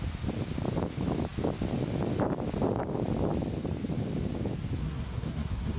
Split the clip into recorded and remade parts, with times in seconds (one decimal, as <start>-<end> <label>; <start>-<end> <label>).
0.0-4.8 recorded; 4.8-5.8 remade